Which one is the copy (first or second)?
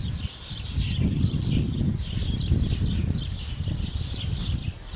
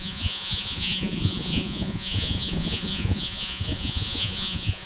second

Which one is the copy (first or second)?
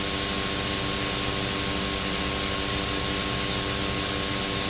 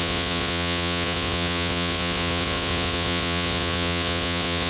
second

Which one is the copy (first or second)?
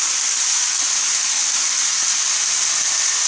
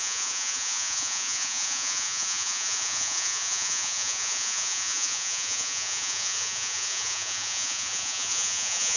second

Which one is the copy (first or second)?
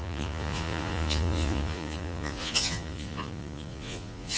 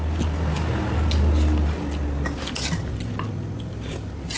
first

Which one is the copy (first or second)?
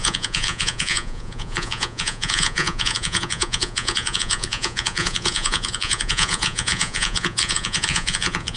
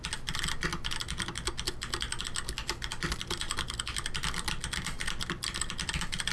first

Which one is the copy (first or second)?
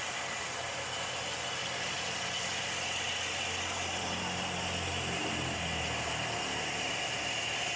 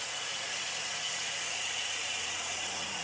second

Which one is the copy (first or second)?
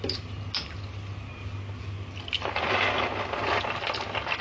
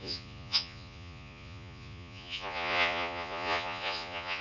second